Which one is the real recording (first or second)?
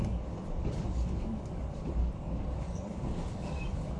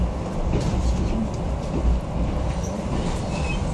second